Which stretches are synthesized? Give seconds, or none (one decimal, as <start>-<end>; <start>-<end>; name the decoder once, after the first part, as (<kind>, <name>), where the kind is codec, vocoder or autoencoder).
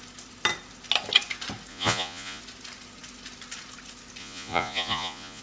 1.7-2.4 (vocoder, Vocos); 4.2-5.4